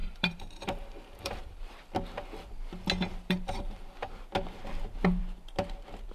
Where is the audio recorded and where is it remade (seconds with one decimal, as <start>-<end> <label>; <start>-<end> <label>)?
0.0-1.7 remade; 1.7-3.1 recorded; 3.1-4.1 remade; 4.1-6.1 recorded